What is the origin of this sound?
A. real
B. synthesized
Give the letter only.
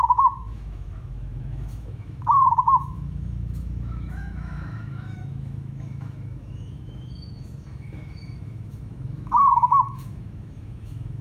B